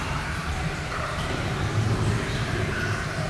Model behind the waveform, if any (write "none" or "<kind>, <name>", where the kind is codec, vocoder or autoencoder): vocoder, BigVGAN v2